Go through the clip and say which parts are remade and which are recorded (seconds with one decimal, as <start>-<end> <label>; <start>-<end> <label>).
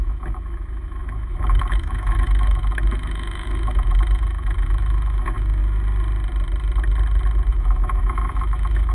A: 0.0-5.6 remade; 5.6-7.5 recorded; 7.5-8.9 remade